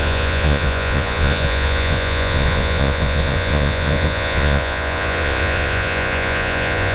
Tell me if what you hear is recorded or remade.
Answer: remade